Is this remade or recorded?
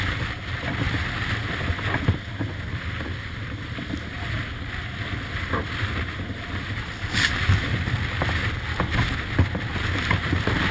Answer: recorded